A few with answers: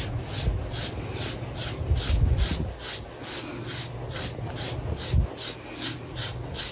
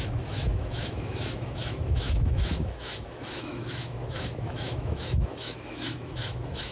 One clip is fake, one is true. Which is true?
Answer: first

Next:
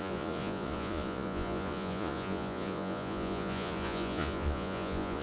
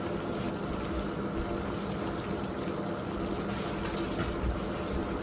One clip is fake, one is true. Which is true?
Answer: second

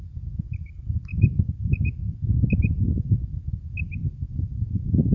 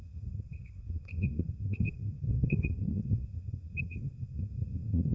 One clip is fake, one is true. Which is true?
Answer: first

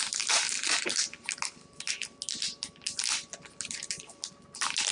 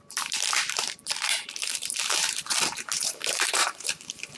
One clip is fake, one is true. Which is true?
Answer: first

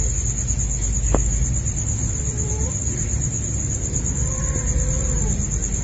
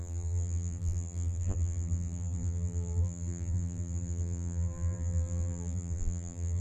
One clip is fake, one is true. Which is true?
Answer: first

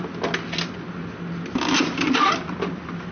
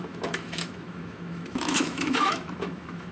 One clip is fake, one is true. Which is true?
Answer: first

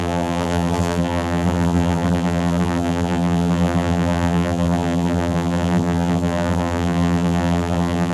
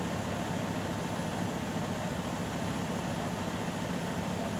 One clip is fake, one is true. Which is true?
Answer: second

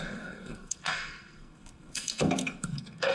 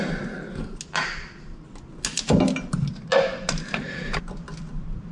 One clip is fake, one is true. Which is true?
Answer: second